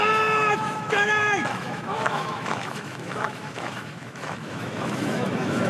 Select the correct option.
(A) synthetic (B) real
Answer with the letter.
A